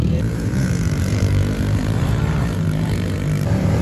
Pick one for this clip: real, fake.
fake